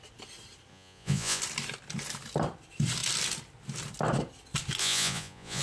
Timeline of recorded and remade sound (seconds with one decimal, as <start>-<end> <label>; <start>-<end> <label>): 0.0-0.7 recorded; 0.7-1.4 remade; 1.4-4.8 recorded; 4.8-5.6 remade